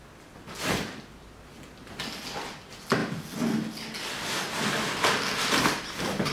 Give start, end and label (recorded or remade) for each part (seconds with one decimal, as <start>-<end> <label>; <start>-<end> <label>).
0.0-6.3 recorded